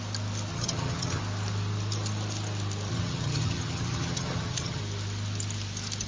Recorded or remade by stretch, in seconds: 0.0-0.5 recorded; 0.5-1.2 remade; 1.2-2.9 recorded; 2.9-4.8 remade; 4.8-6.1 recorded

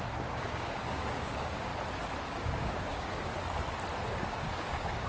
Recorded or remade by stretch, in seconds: 0.0-1.7 remade; 1.7-2.3 recorded; 2.3-3.3 remade; 3.3-4.1 recorded; 4.1-5.1 remade

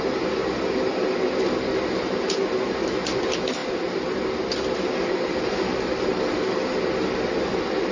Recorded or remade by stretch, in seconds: 0.0-7.9 recorded

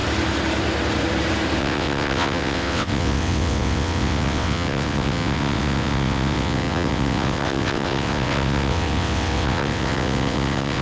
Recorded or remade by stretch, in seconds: 0.0-1.6 recorded; 1.6-10.8 remade

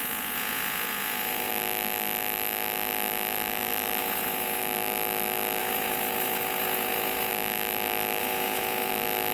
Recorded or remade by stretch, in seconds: 0.0-1.5 remade; 1.5-4.0 recorded; 4.0-4.6 remade; 4.6-5.6 recorded; 5.6-7.3 remade; 7.3-8.2 recorded; 8.2-8.9 remade; 8.9-9.3 recorded

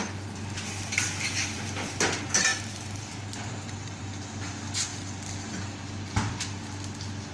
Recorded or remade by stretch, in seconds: 0.0-2.5 recorded; 2.5-4.0 remade; 4.0-7.3 recorded

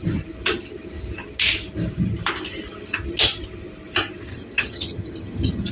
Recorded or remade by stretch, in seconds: 0.0-4.3 recorded; 4.3-5.7 remade

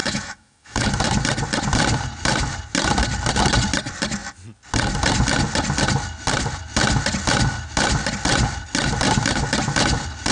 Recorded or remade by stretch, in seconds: 0.0-0.9 remade; 0.9-10.3 recorded